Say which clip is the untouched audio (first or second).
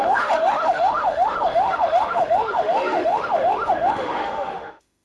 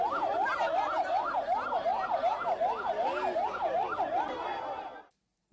second